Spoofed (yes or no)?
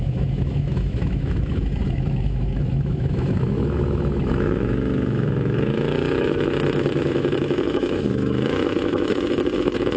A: yes